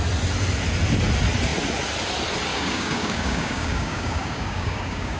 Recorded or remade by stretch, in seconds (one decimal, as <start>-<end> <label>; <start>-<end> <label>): 0.0-2.5 recorded; 2.5-5.2 remade